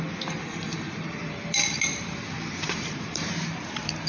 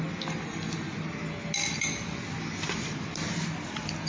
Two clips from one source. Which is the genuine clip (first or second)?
second